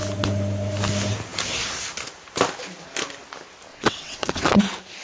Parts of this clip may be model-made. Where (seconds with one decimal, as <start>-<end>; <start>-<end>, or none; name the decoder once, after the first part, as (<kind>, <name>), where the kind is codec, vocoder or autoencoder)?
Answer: 3.7-4.6 (vocoder, WaveNeXt)